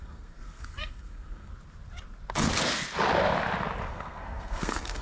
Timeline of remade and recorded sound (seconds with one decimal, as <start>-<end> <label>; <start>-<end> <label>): 0.0-1.5 remade; 1.5-3.9 recorded; 3.9-5.0 remade